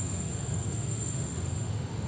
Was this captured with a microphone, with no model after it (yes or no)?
no